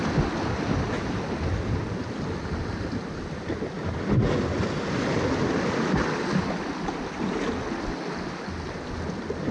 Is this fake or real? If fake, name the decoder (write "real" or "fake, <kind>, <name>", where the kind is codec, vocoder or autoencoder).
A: real